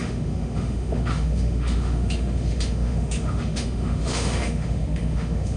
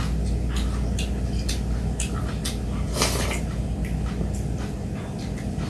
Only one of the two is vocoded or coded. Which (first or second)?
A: first